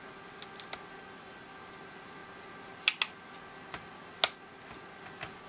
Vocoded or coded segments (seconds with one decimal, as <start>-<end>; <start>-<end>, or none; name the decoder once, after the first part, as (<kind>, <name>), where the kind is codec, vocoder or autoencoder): none